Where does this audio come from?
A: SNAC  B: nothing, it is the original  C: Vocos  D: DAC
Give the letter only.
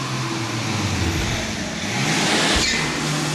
B